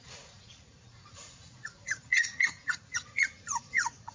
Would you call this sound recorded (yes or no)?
no